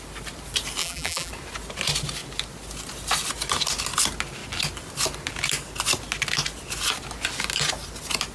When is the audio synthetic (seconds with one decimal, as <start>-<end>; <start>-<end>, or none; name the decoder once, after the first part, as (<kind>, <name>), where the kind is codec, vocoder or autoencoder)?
0.8-1.3 (vocoder, BigVGAN v2)